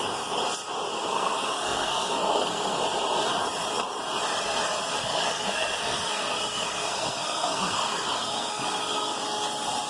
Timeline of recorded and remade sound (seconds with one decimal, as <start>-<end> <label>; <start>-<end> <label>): 0.0-0.9 recorded; 0.9-2.8 remade; 2.8-4.8 recorded; 4.8-9.2 remade; 9.2-9.9 recorded